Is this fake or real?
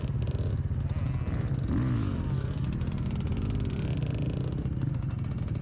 real